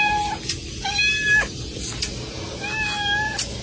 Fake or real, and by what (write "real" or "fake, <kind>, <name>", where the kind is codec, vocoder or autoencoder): real